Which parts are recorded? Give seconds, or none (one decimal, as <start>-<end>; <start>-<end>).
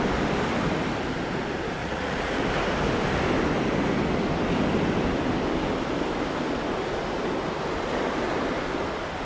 0.0-1.8; 2.4-9.2